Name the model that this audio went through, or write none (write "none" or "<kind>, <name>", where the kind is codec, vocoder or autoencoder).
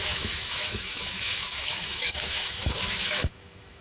autoencoder, DAC-VAE